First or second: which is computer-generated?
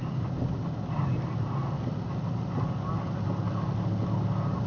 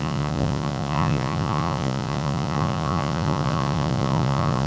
second